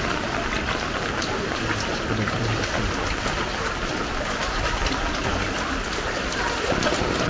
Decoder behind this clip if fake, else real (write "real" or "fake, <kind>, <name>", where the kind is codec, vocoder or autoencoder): real